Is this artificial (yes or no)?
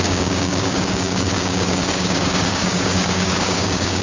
yes